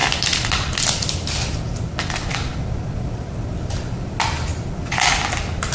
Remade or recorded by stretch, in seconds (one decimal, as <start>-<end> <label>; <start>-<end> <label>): 0.0-5.7 recorded